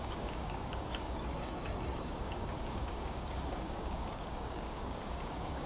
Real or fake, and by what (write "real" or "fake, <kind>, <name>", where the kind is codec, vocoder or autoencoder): fake, codec, DAC